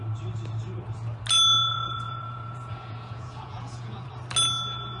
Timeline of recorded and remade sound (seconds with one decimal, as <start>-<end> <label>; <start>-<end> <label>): 0.0-1.7 recorded; 1.7-4.1 remade; 4.1-5.0 recorded